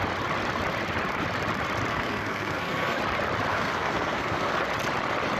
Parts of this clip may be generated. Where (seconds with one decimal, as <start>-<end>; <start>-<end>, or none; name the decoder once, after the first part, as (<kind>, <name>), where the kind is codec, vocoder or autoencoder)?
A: 1.9-3.0 (codec, SNAC); 3.5-4.6